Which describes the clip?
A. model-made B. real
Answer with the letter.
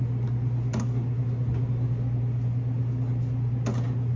B